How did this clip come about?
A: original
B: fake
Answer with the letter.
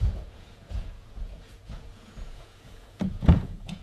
B